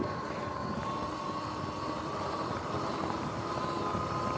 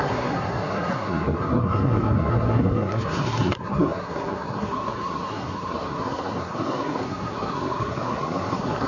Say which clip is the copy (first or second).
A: second